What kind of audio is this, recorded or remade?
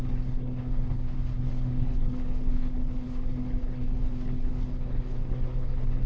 remade